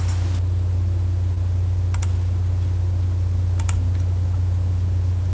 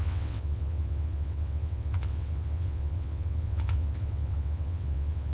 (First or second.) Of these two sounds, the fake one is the second